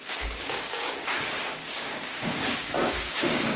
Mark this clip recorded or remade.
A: remade